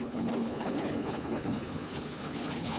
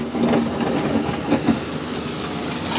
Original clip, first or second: second